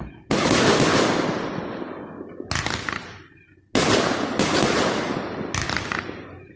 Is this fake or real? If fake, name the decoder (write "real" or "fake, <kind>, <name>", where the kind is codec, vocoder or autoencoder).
real